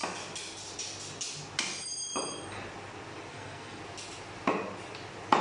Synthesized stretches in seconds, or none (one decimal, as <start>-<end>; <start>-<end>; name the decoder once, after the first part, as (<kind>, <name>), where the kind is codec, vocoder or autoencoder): 3.3-3.8 (codec, SNAC)